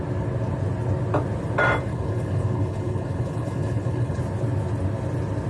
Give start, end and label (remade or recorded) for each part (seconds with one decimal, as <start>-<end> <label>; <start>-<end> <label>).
0.0-1.9 recorded; 1.9-4.2 remade; 4.2-5.5 recorded